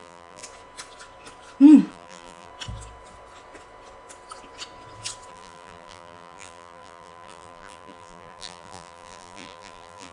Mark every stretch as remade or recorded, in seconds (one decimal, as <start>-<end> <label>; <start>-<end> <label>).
0.0-0.4 remade; 0.4-1.9 recorded; 1.9-2.5 remade; 2.5-5.3 recorded; 5.3-10.1 remade